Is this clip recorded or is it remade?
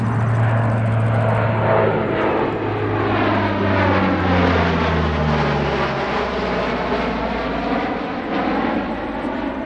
recorded